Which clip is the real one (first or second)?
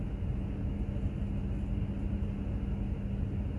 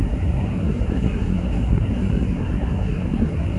first